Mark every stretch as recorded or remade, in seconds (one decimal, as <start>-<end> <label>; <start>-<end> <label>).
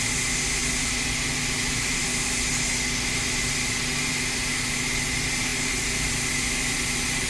0.0-7.3 recorded